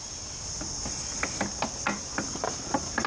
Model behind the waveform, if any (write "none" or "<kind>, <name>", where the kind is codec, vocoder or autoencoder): none